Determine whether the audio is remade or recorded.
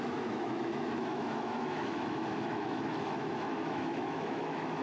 remade